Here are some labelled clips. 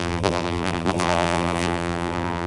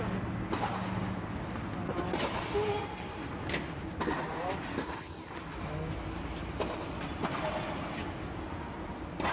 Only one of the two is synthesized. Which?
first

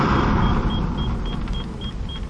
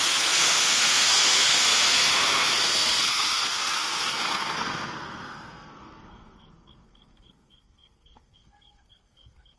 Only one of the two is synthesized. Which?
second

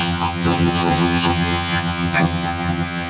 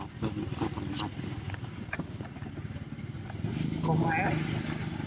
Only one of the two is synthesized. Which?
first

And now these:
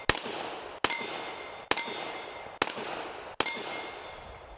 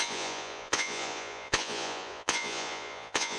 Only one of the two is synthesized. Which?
second